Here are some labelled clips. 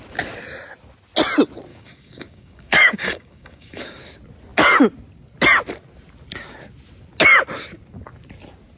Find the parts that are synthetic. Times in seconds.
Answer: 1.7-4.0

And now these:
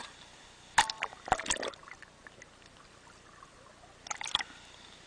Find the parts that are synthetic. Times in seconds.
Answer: none

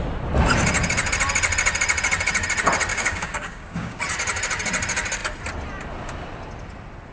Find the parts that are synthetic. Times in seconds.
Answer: 2.9-4.0

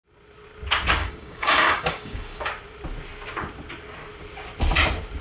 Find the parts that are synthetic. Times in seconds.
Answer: 1.0-2.5

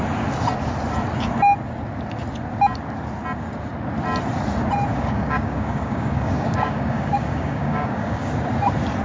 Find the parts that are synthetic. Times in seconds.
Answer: 4.9-8.3

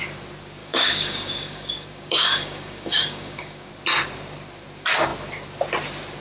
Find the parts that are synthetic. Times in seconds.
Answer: 0.6-3.7